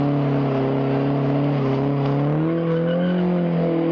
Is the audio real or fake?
real